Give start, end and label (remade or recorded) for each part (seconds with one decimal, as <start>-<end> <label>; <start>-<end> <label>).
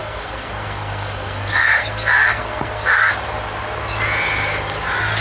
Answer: 0.0-3.1 remade; 3.1-5.2 recorded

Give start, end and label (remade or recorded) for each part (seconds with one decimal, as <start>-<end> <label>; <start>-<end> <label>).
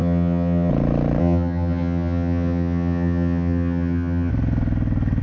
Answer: 0.0-0.7 remade; 0.7-1.2 recorded; 1.2-4.3 remade; 4.3-5.2 recorded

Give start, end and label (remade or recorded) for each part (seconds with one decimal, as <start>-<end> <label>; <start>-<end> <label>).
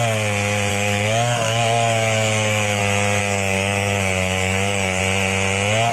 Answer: 0.0-0.7 recorded; 0.7-2.8 remade; 2.8-3.2 recorded; 3.2-5.0 remade; 5.0-5.9 recorded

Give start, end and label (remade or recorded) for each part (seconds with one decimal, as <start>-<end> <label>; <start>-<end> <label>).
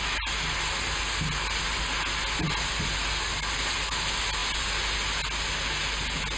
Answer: 0.0-6.4 recorded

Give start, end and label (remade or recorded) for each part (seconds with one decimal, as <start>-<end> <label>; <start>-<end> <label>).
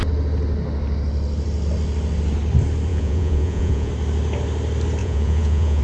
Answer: 0.0-2.9 recorded; 2.9-3.9 remade; 3.9-5.0 recorded; 5.0-5.8 remade